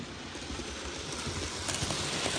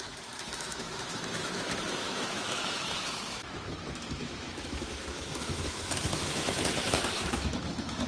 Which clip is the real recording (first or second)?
first